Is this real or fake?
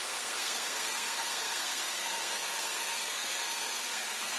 fake